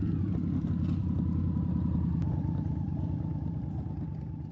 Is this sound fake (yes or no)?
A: no